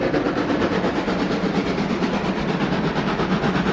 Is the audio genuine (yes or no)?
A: yes